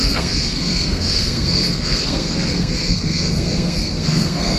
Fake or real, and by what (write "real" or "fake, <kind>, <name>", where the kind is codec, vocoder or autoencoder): fake, codec, SNAC